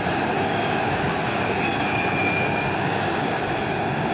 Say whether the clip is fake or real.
fake